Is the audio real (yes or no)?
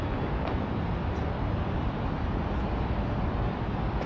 yes